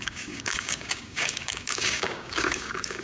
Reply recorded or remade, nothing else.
remade